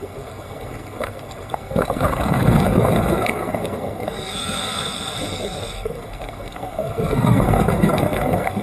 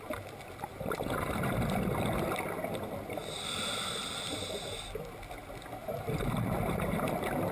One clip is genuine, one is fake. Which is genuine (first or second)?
second